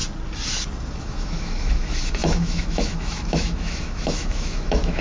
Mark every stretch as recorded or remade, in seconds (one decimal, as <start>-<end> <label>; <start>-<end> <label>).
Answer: 0.0-1.0 recorded; 1.0-5.0 remade